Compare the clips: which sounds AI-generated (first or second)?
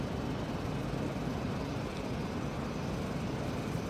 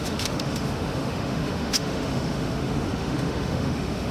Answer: second